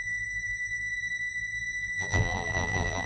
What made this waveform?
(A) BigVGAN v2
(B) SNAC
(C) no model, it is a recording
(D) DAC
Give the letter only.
A